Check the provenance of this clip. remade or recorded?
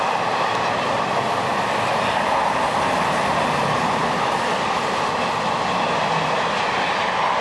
recorded